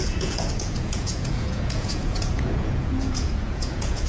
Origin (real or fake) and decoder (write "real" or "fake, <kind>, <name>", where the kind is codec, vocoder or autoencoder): fake, vocoder, Vocos